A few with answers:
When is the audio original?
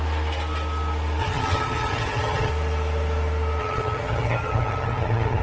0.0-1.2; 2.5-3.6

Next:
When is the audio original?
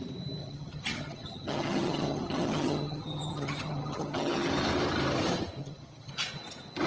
0.0-0.4; 4.5-5.6; 6.1-6.9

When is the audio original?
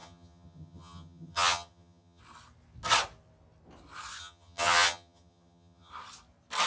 2.2-4.2; 5.9-6.7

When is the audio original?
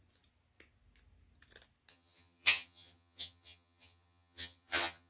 0.0-1.9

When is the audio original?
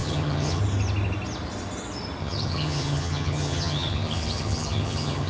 0.6-2.2